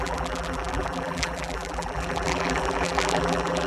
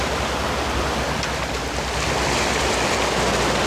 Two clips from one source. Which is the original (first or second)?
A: second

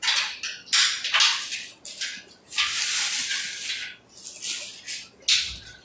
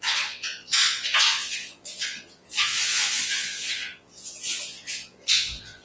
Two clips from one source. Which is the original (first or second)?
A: first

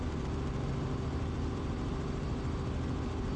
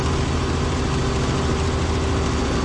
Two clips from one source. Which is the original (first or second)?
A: second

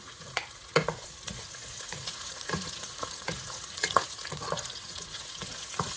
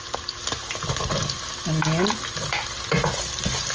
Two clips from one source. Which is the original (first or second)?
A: second